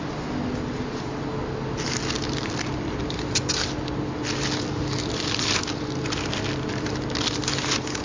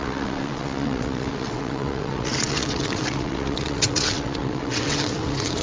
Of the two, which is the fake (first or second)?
second